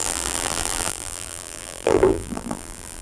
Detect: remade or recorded remade